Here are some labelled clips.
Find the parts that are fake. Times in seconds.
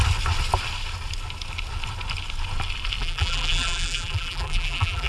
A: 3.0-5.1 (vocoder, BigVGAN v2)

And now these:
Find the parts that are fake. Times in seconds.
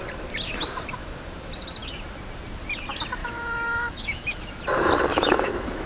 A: 3.2-4.5 (autoencoder, DAC-VAE); 5.1-5.9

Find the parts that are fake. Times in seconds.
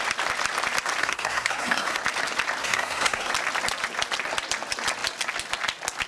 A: 1.0-2.0 (codec, SNAC); 2.6-3.3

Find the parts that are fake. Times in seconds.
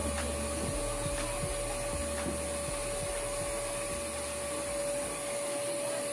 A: none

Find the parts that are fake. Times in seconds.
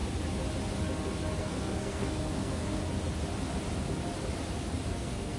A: 1.4-2.8 (codec, SNAC); 4.9-5.4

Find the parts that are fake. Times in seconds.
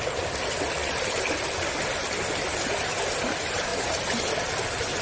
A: 0.0-0.8 (vocoder, BigVGAN v2); 3.2-3.7; 4.3-5.0